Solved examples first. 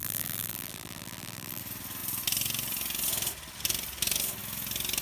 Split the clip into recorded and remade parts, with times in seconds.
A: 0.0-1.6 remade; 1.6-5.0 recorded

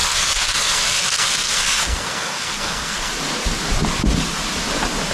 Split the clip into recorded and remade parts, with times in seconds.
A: 0.0-3.1 remade; 3.1-5.1 recorded

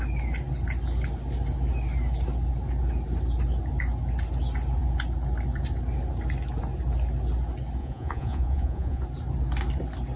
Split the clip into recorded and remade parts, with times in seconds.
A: 0.0-7.8 recorded; 7.8-9.0 remade; 9.0-10.2 recorded

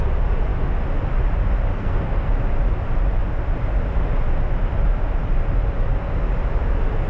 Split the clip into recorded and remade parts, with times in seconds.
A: 0.0-1.7 recorded; 1.7-2.3 remade; 2.3-7.1 recorded

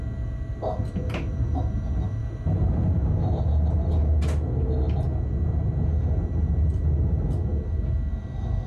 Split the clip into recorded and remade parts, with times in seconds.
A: 0.0-8.7 recorded

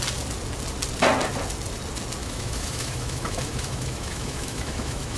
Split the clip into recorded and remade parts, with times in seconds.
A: 0.0-2.2 recorded; 2.2-5.2 remade